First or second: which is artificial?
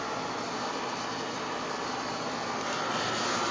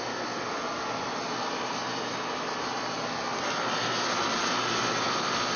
first